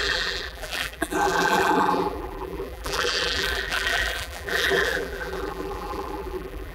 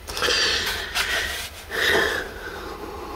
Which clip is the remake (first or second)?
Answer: first